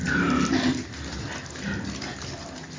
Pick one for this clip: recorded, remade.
recorded